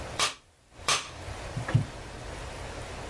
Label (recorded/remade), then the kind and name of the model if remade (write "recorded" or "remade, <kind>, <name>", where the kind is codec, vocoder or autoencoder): remade, vocoder, BigVGAN v2